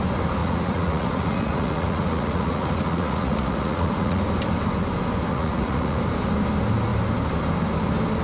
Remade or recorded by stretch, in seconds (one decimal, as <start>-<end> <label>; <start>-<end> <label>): 0.0-0.4 recorded; 0.4-4.2 remade; 4.2-5.3 recorded; 5.3-6.0 remade; 6.0-8.2 recorded